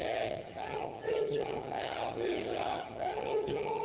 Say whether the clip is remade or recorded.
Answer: remade